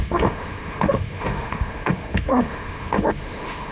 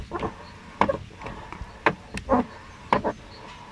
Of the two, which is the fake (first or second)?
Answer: first